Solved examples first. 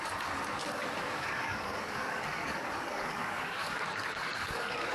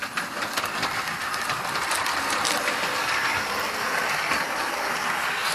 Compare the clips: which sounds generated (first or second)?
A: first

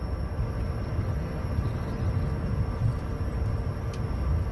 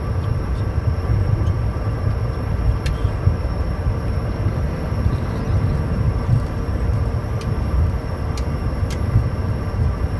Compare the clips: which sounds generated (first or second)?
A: second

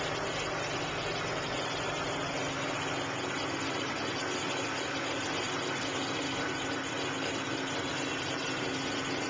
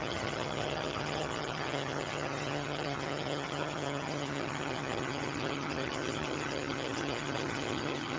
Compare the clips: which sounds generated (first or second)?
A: second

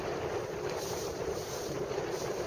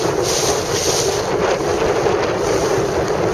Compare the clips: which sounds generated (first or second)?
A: first